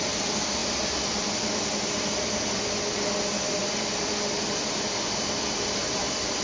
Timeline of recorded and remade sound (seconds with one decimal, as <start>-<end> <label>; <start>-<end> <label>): 0.0-6.4 recorded

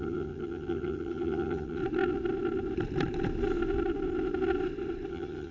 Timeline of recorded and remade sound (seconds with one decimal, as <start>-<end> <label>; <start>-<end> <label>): 0.0-1.8 remade; 1.8-5.1 recorded; 5.1-5.5 remade

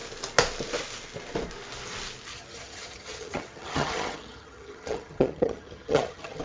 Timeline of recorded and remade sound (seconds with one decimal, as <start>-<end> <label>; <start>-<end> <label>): 0.0-2.3 recorded; 2.3-6.4 remade

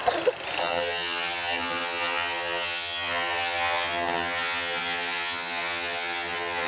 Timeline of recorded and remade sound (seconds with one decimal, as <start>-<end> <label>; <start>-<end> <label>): 0.0-0.6 recorded; 0.6-6.7 remade

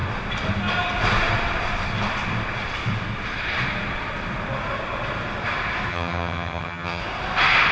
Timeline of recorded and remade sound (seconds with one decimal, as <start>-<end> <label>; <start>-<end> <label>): 0.0-5.9 recorded; 5.9-7.0 remade; 7.0-7.7 recorded